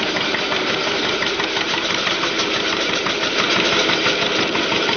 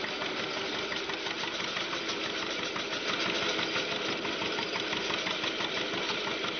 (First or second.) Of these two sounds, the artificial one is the first